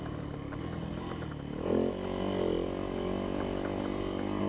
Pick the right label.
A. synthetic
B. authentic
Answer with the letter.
B